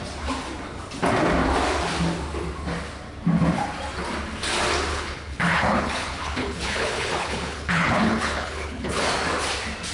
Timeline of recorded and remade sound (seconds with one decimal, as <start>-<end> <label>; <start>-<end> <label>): 0.0-4.9 recorded; 4.9-9.0 remade; 9.0-9.9 recorded